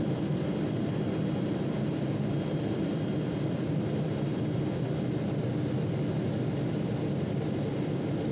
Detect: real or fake real